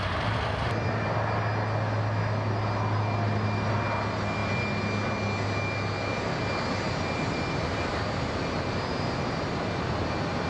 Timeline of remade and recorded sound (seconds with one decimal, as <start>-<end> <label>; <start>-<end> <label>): 0.0-10.5 recorded